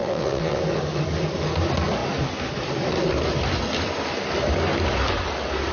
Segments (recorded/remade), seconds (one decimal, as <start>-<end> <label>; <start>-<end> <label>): 0.0-0.6 remade; 0.6-5.7 recorded

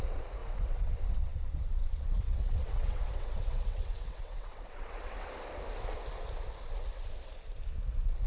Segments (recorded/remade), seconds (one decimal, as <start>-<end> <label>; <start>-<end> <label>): 0.0-0.4 recorded; 0.4-1.3 remade; 1.3-1.8 recorded; 1.8-5.3 remade; 5.3-8.3 recorded

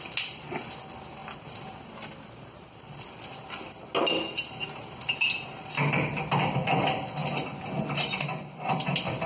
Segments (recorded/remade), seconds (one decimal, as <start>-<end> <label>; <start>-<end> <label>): 0.0-9.3 recorded

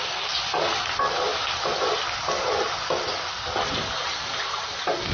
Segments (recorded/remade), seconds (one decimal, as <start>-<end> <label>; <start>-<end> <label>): 0.0-5.1 recorded

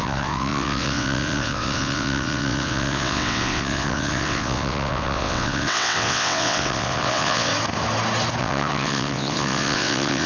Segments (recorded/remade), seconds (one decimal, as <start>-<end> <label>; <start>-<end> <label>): 0.0-7.5 remade; 7.5-8.4 recorded; 8.4-10.3 remade

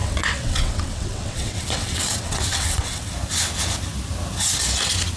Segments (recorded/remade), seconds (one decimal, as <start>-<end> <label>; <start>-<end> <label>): 0.0-3.1 remade; 3.1-5.2 recorded